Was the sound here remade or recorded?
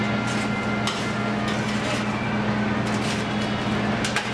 recorded